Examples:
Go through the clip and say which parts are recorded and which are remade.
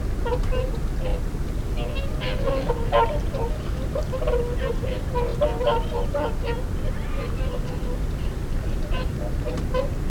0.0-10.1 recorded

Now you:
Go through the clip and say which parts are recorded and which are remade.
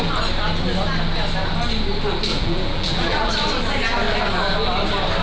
0.0-2.3 recorded; 2.3-3.3 remade; 3.3-5.2 recorded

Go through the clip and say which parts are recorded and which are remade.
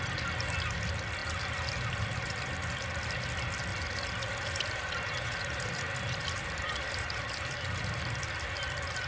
0.0-1.2 recorded; 1.2-2.3 remade; 2.3-3.7 recorded; 3.7-7.8 remade; 7.8-9.1 recorded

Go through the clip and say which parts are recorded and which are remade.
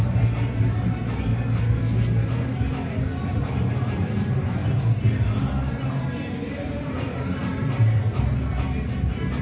0.0-1.3 remade; 1.3-3.2 recorded; 3.2-4.6 remade; 4.6-5.4 recorded; 5.4-9.4 remade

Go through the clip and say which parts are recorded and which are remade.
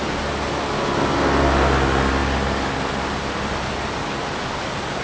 0.0-5.0 recorded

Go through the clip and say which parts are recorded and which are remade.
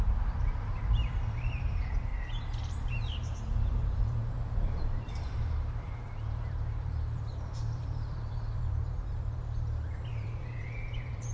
0.0-2.1 remade; 2.1-2.7 recorded; 2.7-11.3 remade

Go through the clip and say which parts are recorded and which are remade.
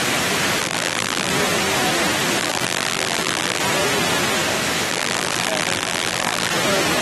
0.0-0.6 recorded; 0.6-1.3 remade; 1.3-2.4 recorded; 2.4-3.6 remade; 3.6-4.9 recorded; 4.9-6.5 remade; 6.5-7.0 recorded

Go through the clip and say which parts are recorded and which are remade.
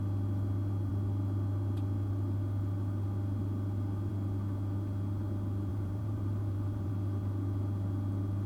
0.0-5.7 recorded; 5.7-6.9 remade; 6.9-8.5 recorded